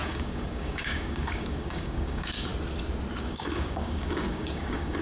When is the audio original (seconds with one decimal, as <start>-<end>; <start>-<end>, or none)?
2.5-3.2